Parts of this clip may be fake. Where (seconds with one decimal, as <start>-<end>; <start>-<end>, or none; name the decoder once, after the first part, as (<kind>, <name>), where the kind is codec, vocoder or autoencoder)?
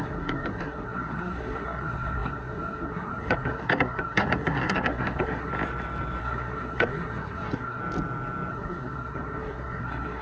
0.0-5.5 (codec, SNAC); 6.2-7.8; 8.5-10.2